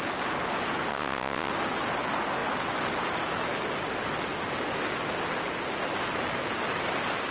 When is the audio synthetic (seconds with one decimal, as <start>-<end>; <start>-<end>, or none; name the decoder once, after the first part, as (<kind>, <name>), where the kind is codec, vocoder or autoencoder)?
0.9-1.5 (vocoder, WaveNeXt)